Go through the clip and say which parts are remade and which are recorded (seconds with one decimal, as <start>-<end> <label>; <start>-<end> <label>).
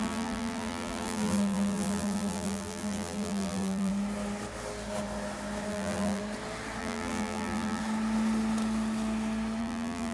0.0-3.9 remade; 3.9-5.7 recorded; 5.7-6.2 remade; 6.2-6.8 recorded; 6.8-7.8 remade; 7.8-9.6 recorded; 9.6-10.1 remade